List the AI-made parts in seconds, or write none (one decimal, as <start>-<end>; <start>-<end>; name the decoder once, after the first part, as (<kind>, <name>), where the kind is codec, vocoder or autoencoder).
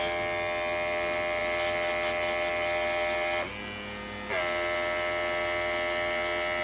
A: none